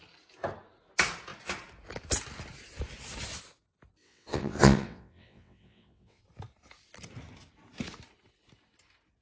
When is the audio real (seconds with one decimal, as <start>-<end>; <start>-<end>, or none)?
0.0-4.0; 6.2-9.2

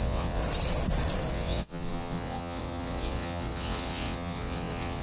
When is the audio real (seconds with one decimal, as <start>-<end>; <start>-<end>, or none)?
0.4-1.3

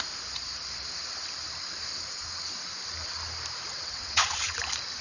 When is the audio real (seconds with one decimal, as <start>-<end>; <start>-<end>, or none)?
0.0-3.7; 4.6-5.0

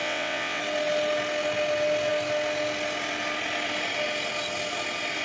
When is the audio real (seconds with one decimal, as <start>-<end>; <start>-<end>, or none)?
0.6-5.2

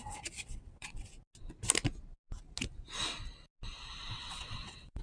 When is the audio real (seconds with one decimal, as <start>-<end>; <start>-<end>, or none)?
1.1-4.1

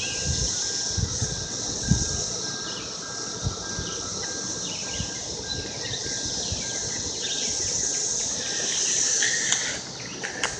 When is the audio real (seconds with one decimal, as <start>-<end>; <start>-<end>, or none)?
0.0-1.2; 2.1-6.8; 8.2-10.6

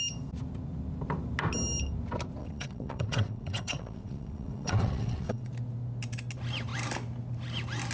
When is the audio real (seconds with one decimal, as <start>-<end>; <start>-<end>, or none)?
0.0-2.4; 5.5-7.9